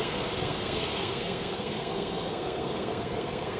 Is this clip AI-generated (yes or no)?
yes